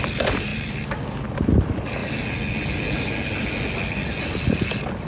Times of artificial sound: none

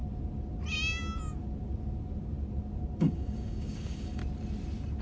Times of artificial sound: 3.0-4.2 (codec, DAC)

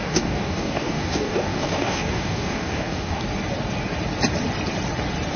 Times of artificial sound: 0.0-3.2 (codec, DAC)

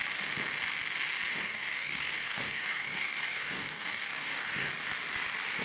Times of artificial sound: 1.3-4.7 (codec, DAC)

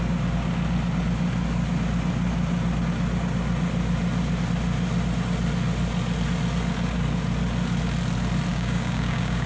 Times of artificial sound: 8.5-9.5 (codec, DAC)

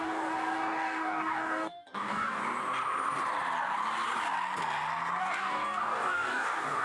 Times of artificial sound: 0.0-2.4 (codec, DAC); 5.2-6.8

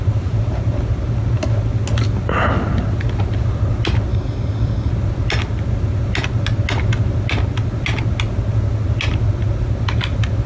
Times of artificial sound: 4.1-4.9 (codec, DAC)

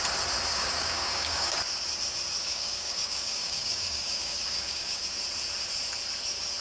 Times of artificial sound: 0.5-1.6 (codec, DAC); 2.4-5.0